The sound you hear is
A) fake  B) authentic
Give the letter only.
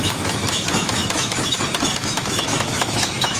A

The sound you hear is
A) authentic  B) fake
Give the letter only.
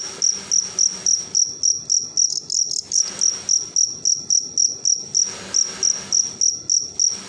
A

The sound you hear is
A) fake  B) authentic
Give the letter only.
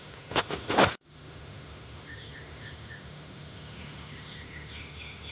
A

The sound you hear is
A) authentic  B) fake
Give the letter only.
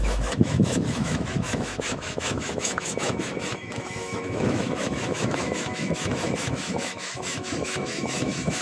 B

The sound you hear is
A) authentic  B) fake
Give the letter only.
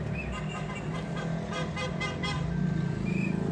A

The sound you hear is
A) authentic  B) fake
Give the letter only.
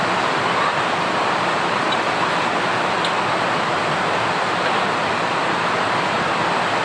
A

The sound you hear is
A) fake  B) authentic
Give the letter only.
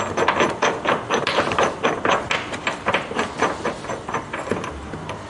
B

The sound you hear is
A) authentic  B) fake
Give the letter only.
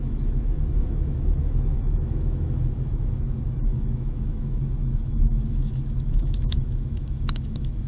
B